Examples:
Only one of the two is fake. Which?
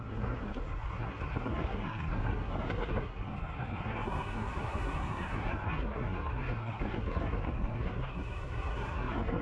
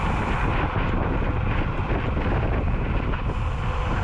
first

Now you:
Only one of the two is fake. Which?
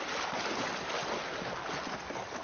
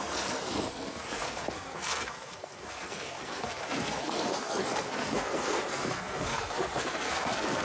second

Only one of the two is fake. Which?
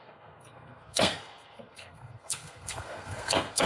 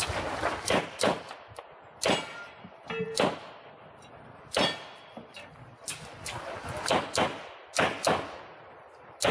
first